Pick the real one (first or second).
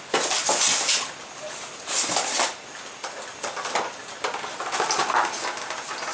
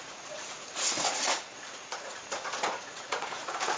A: first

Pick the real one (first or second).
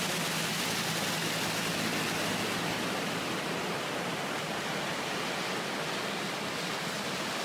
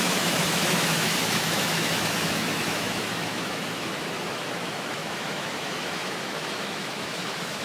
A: first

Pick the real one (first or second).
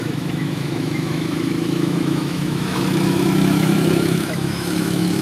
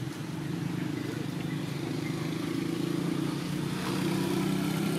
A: second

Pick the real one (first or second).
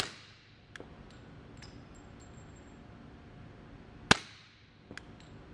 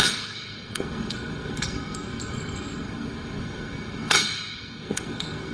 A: first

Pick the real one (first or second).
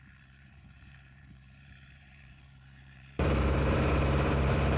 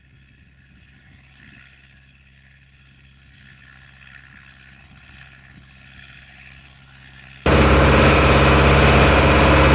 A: second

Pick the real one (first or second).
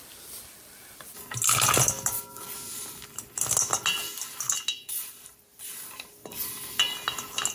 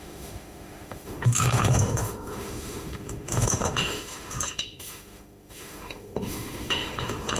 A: first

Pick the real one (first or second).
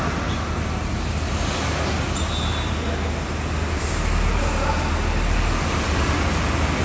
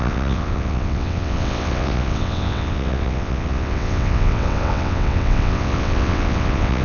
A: first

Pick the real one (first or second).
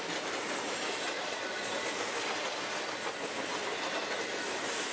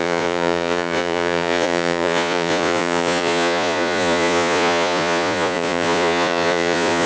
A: first